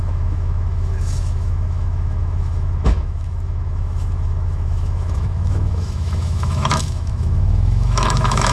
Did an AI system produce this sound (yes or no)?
yes